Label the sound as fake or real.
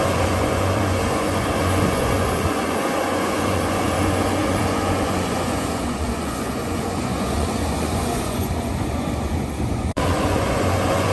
fake